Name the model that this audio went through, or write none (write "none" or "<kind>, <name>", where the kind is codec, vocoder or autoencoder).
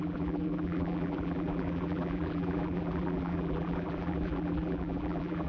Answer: vocoder, BigVGAN v2